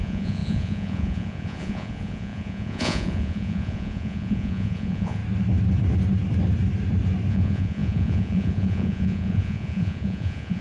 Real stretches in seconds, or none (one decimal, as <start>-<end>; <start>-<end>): 5.2-7.3